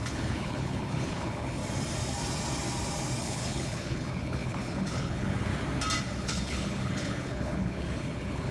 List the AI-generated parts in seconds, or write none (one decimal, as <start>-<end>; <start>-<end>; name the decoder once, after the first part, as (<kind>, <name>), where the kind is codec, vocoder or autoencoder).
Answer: 0.0-1.6 (codec, HILCodec); 3.2-5.5; 6.0-8.5